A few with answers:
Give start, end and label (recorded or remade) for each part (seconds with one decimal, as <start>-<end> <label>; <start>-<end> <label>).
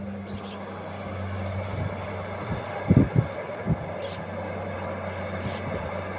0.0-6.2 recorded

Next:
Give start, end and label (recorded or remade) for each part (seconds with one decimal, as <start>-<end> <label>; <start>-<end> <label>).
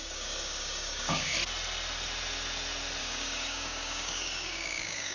0.0-1.3 remade; 1.3-3.0 recorded; 3.0-5.1 remade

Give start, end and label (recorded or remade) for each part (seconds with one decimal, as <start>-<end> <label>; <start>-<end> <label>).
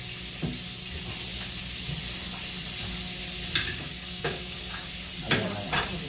0.0-3.6 recorded; 3.6-4.9 remade; 4.9-6.1 recorded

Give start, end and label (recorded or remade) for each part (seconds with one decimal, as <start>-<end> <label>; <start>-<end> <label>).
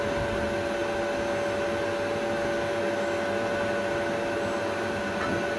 0.0-5.6 recorded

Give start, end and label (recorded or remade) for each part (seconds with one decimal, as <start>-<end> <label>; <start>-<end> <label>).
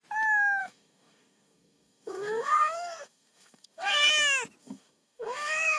0.0-0.6 recorded; 0.6-4.1 remade; 4.1-4.6 recorded; 4.6-5.8 remade